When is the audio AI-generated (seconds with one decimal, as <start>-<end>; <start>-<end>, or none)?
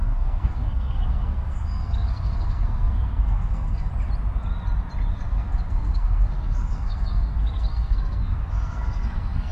0.0-3.9; 5.1-9.5